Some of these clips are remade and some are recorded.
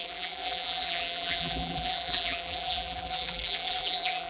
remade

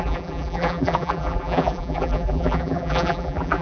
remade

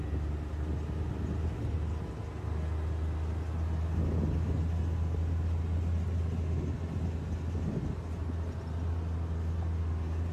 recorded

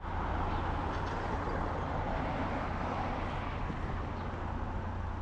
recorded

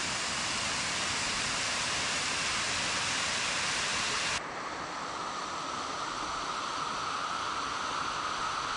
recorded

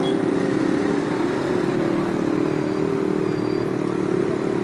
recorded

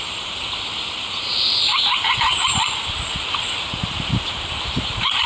remade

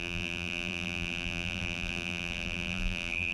remade